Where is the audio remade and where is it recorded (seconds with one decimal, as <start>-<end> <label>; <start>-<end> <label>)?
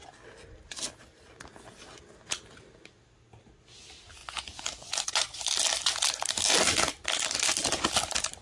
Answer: 0.0-4.2 recorded; 4.2-5.4 remade; 5.4-8.4 recorded